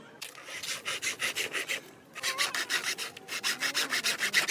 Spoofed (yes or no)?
no